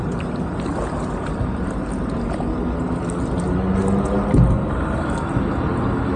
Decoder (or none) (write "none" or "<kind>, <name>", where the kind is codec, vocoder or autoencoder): none